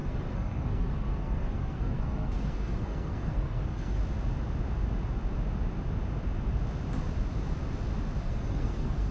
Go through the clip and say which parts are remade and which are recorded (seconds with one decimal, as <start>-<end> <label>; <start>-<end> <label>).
0.0-4.0 remade; 4.0-8.2 recorded; 8.2-9.1 remade